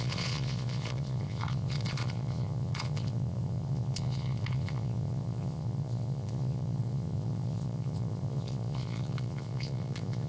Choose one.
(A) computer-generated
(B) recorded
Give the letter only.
A